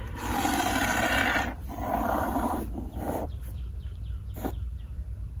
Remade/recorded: remade